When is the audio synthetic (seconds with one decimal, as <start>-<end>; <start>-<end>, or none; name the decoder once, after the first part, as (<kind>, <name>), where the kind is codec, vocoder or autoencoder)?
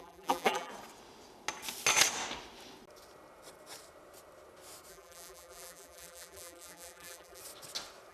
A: 0.0-0.7 (vocoder, BigVGAN v2); 4.9-7.4